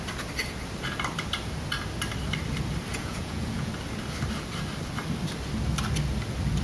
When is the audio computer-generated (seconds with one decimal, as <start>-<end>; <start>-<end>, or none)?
2.9-3.7